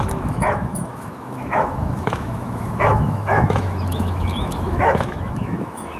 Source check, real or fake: fake